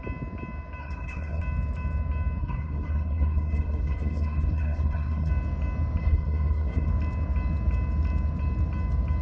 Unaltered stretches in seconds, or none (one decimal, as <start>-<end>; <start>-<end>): 0.0-0.8; 1.4-2.4; 5.3-6.0; 6.9-9.2